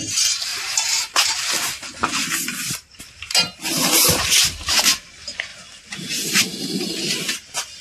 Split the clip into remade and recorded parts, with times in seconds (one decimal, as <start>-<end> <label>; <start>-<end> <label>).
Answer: 0.0-0.5 recorded; 0.5-3.0 remade; 3.0-5.5 recorded; 5.5-6.6 remade; 6.6-7.8 recorded